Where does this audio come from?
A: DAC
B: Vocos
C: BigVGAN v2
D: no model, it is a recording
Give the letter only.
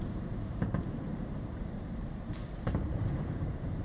C